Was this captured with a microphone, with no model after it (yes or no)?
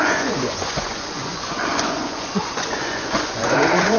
no